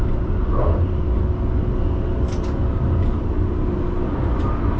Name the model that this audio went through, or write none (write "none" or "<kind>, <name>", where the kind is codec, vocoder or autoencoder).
none